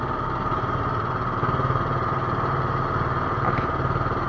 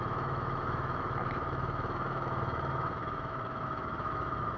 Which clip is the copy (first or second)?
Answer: second